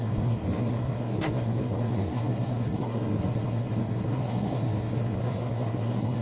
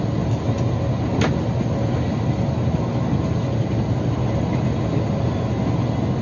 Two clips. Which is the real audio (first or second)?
second